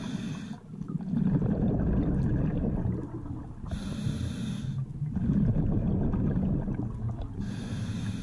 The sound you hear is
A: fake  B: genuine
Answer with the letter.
B